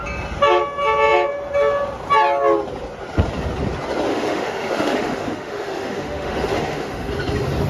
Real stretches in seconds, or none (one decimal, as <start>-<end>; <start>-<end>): 0.0-4.1; 7.1-7.7